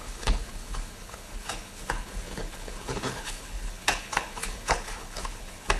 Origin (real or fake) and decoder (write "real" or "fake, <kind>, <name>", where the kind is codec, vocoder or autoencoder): fake, codec, HILCodec